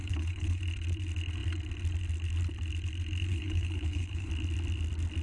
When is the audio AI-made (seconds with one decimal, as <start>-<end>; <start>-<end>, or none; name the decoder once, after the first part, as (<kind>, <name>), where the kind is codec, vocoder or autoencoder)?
0.0-0.6 (codec, HILCodec); 3.3-4.3